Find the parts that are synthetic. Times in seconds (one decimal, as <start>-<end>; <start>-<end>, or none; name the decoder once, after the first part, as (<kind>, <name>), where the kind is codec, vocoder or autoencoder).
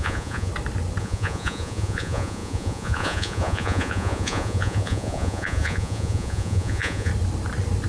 0.0-0.5 (vocoder, Vocos); 1.0-7.1